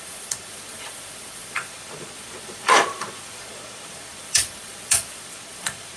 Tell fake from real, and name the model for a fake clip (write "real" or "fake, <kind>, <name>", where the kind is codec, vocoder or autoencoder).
fake, vocoder, Vocos